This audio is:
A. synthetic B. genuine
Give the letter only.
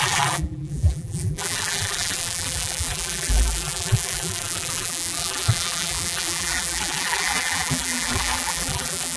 A